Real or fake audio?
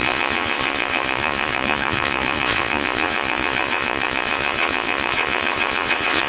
fake